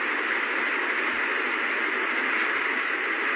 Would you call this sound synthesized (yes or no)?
no